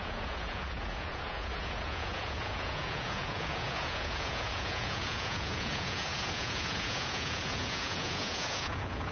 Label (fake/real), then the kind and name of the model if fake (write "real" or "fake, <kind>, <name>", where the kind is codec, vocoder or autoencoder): fake, vocoder, Vocos